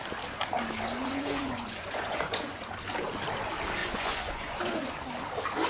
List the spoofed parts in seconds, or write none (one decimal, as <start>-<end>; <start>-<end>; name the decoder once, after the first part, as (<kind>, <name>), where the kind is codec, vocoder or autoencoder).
1.0-2.6 (vocoder, Vocos); 3.8-4.9